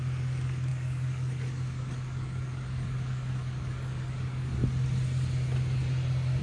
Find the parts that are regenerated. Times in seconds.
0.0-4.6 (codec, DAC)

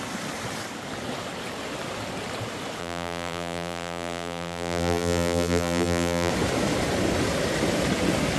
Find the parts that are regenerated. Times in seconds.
2.8-6.3 (vocoder, BigVGAN v2)

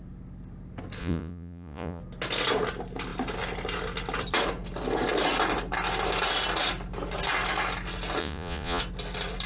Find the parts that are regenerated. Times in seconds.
1.0-2.0 (vocoder, Vocos); 8.2-8.8